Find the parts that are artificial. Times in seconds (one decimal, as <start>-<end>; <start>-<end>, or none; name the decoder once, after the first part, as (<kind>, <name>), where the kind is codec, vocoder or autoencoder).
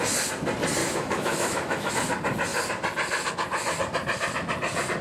0.8-1.9 (autoencoder, DAC-VAE)